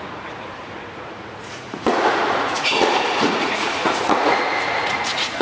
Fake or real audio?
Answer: fake